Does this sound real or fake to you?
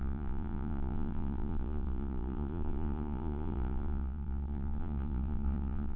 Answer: fake